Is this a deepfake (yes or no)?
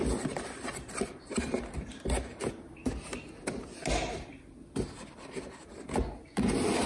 no